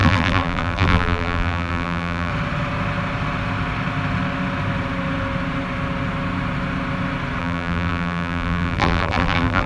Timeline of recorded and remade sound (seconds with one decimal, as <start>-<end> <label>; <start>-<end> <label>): 0.0-2.3 remade; 2.3-7.4 recorded; 7.4-9.7 remade